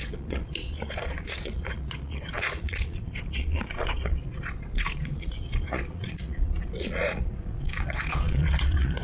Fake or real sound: fake